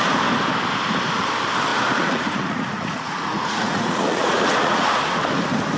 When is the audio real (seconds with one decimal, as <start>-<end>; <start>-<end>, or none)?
0.0-1.7; 5.2-5.8

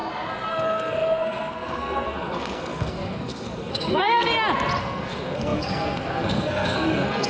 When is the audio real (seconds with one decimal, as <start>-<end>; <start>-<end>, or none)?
0.0-0.5; 4.3-4.8

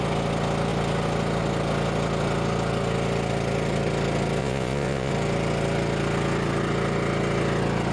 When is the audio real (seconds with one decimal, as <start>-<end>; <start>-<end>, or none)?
0.0-4.4; 5.1-7.9

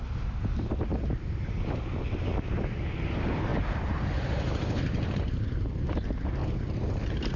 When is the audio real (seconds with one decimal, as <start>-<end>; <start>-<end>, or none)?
0.0-3.5; 5.4-6.4

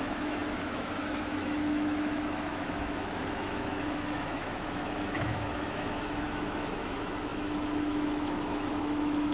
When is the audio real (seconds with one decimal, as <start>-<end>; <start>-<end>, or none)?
none

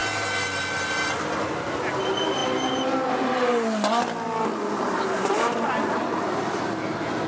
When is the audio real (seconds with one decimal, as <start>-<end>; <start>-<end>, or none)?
0.0-7.3

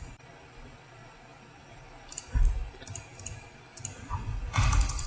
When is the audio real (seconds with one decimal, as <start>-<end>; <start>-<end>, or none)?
0.0-3.9